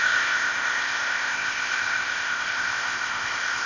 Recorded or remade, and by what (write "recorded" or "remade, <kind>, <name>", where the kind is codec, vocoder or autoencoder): remade, codec, ZipCodec